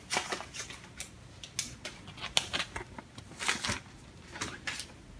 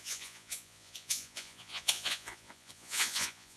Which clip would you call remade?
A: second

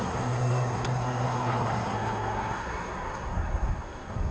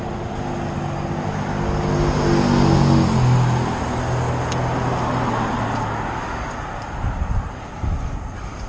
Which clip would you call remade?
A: first